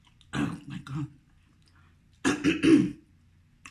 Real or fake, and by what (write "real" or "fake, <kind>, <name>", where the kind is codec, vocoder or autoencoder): real